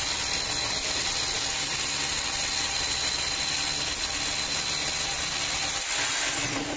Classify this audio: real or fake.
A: real